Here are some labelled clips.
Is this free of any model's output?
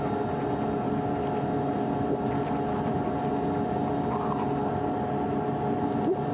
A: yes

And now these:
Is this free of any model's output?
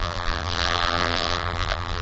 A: no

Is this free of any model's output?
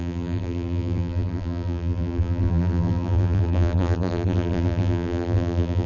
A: no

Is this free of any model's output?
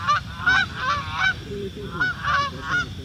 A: no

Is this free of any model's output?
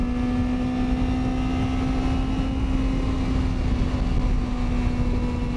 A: yes